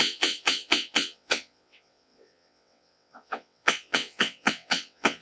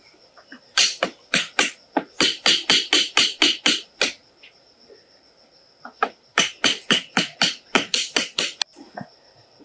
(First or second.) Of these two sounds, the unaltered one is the second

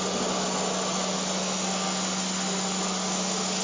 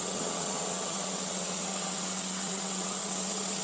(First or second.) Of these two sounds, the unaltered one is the first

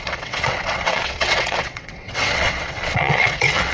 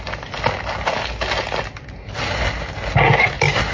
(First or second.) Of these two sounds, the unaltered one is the second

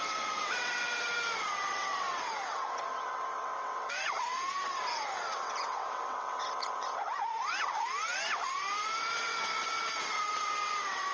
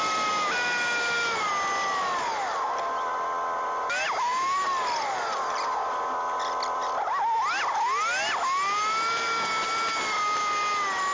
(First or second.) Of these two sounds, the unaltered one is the second